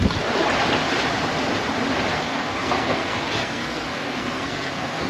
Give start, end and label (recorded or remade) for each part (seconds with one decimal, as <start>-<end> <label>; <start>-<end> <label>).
0.0-2.1 recorded; 2.1-5.1 remade